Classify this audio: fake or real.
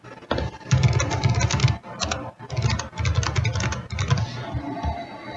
real